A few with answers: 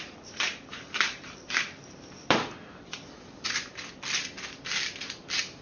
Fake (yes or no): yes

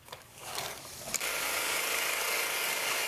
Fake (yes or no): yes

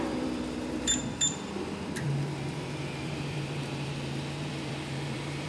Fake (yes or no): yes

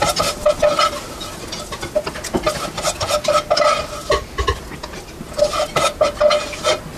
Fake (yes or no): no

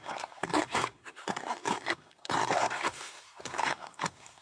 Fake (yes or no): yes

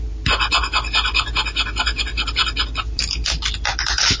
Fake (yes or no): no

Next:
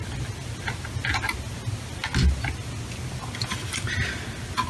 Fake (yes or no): no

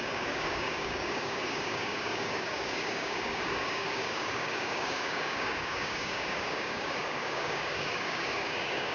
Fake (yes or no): yes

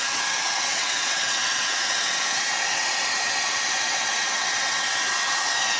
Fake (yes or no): yes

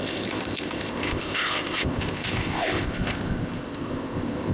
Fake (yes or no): yes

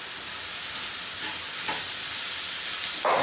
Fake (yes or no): no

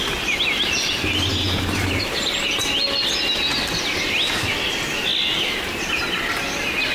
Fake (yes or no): no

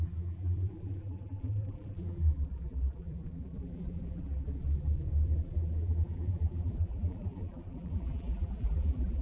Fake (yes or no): yes